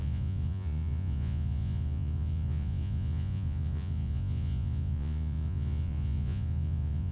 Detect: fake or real fake